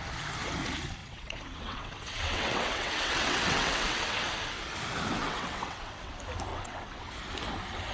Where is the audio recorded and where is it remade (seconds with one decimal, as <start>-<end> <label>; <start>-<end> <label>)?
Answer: 0.0-1.0 recorded; 1.0-4.3 remade; 4.3-5.2 recorded; 5.2-6.1 remade; 6.1-6.5 recorded; 6.5-7.1 remade; 7.1-7.9 recorded